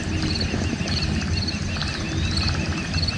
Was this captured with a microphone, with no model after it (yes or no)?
yes